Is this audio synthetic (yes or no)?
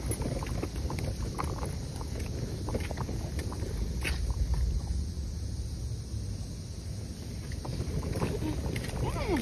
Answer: no